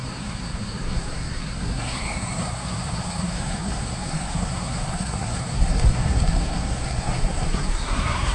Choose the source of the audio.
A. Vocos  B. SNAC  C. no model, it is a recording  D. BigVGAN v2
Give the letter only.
B